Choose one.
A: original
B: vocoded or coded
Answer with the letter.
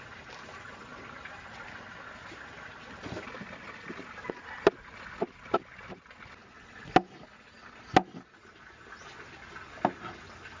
A